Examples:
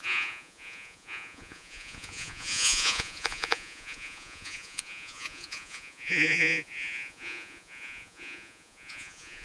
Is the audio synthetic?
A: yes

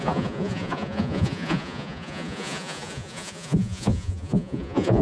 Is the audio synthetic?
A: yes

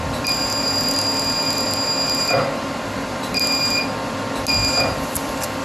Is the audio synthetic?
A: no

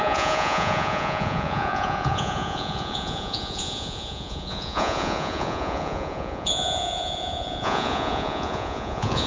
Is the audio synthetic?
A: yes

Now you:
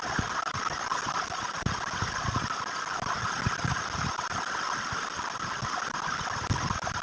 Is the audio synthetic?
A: no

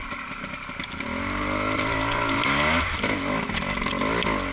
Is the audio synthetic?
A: no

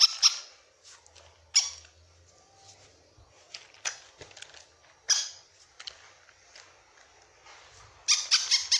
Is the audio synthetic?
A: no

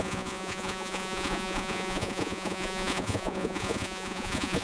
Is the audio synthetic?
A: yes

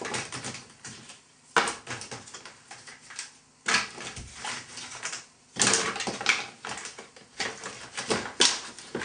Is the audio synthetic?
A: no